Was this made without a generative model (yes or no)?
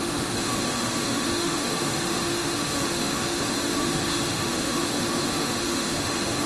no